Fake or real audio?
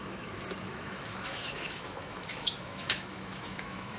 fake